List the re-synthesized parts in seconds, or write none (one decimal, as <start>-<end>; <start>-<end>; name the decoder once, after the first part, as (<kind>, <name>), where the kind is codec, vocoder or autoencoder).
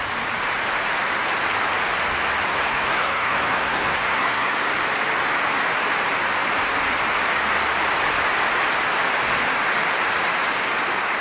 2.5-4.7 (codec, SNAC)